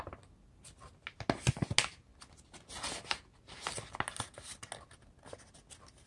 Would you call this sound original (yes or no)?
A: yes